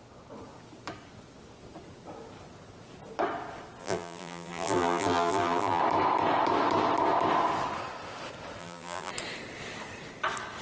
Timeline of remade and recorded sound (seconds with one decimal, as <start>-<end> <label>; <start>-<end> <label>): 0.0-3.8 recorded; 3.8-5.8 remade; 5.8-8.6 recorded; 8.6-9.1 remade; 9.1-10.6 recorded